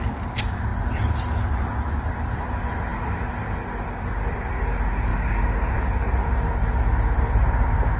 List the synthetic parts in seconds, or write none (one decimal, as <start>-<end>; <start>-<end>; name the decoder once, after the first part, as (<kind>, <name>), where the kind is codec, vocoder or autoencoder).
0.0-5.1 (vocoder, BigVGAN v2); 5.7-8.0